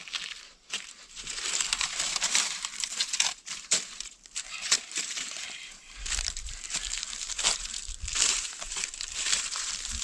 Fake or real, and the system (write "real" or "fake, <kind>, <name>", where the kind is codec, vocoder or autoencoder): fake, vocoder, BigVGAN v2